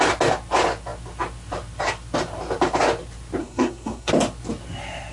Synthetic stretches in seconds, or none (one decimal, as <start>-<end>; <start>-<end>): 3.4-4.1